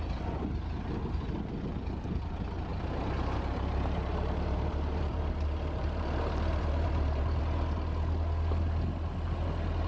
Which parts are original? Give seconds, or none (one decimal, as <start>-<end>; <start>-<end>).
0.0-2.7; 7.4-9.9